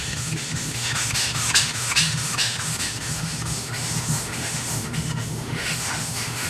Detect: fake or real fake